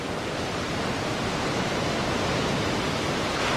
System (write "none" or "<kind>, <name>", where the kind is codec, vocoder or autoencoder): vocoder, BigVGAN v2